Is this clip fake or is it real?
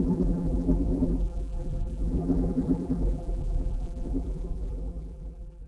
fake